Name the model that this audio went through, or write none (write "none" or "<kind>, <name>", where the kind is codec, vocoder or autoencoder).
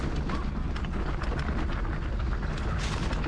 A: none